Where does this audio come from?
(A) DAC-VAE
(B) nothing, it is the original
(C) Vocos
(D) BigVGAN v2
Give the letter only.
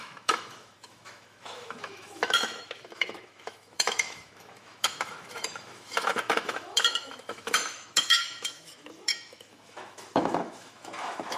A